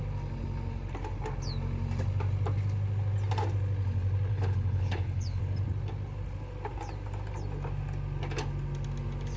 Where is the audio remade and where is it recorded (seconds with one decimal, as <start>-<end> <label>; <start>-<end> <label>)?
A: 0.0-4.3 recorded; 4.3-5.4 remade; 5.4-9.4 recorded